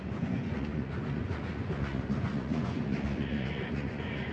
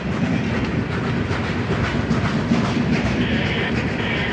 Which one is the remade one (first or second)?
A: first